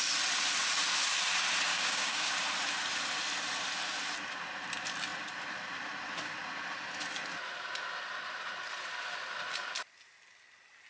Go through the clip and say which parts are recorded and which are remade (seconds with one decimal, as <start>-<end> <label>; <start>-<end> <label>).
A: 0.0-1.7 recorded; 1.7-2.3 remade; 2.3-10.9 recorded